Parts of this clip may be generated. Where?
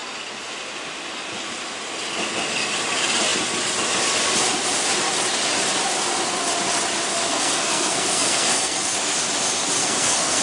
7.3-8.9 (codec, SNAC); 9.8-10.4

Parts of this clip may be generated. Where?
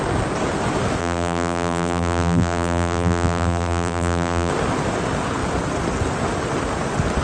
1.0-4.5 (vocoder, BigVGAN v2)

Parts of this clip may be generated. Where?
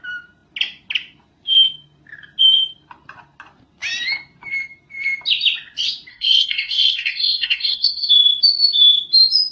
6.1-8.1 (codec, SNAC)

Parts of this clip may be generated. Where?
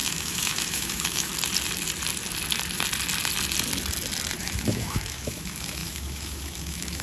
0.0-1.3 (autoencoder, DAC-VAE); 4.4-7.0